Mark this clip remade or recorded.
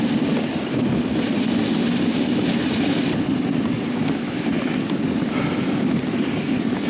recorded